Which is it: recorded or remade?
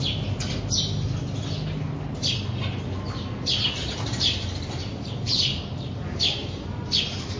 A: recorded